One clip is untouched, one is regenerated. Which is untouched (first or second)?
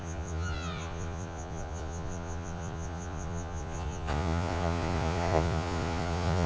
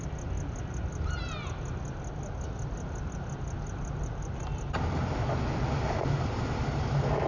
second